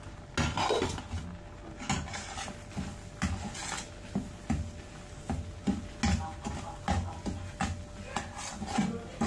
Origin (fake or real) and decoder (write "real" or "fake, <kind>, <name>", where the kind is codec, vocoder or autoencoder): real